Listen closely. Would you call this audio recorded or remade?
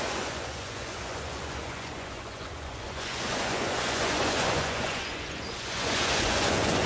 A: remade